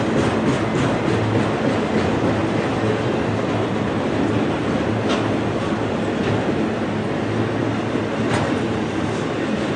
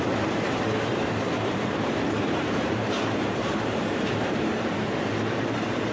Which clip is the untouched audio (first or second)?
first